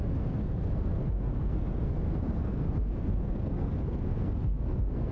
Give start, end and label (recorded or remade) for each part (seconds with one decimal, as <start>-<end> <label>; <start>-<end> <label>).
0.0-5.1 remade